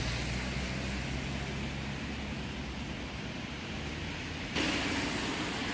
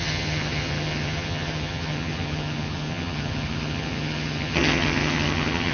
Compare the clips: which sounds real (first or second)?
first